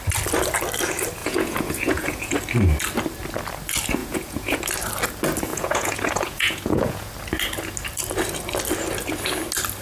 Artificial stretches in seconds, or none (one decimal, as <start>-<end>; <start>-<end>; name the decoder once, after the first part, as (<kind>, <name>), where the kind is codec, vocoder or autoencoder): 1.2-2.3 (vocoder, Vocos); 4.0-4.6; 5.5-7.1